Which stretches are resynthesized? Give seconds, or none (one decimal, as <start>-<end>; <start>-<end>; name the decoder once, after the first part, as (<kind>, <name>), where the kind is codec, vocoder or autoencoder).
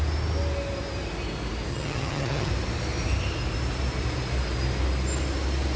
1.7-2.5 (vocoder, HiFi-GAN)